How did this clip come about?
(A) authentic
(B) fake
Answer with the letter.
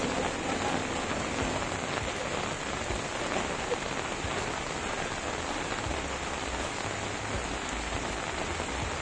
A